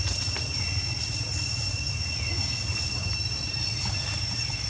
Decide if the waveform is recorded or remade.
recorded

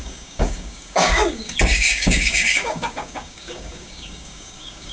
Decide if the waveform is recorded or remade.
remade